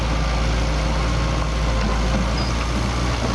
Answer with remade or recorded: recorded